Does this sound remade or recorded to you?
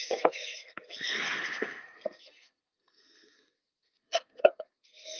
remade